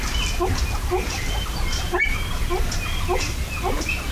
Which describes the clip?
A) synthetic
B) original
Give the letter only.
B